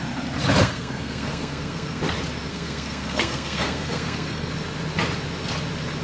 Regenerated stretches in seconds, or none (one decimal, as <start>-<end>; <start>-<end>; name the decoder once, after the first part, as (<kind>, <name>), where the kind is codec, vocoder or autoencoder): 0.6-2.0 (codec, SNAC); 2.5-4.5